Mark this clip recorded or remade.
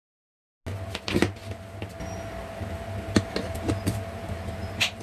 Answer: recorded